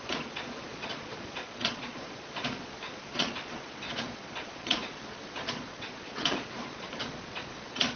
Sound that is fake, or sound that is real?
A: fake